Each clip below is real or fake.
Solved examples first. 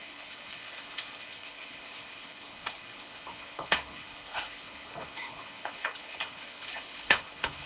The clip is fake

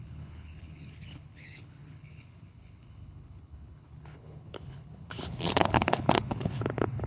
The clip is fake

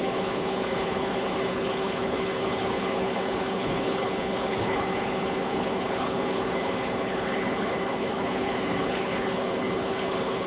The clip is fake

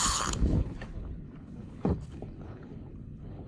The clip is fake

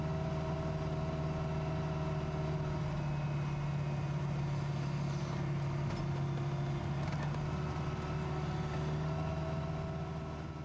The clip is real